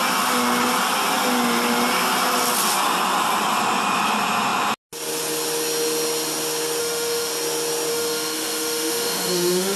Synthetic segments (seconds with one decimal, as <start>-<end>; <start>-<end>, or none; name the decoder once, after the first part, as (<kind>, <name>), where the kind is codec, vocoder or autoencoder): 6.8-7.3 (autoencoder, DAC-VAE); 7.9-9.8